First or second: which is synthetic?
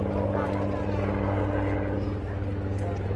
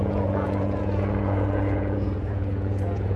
second